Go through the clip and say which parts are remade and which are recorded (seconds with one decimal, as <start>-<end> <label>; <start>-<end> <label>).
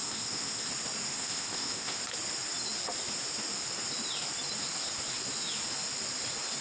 0.0-0.7 remade; 0.7-1.1 recorded; 1.1-2.0 remade; 2.0-6.6 recorded